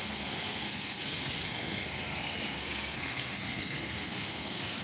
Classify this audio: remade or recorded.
remade